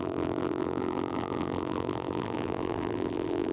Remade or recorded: remade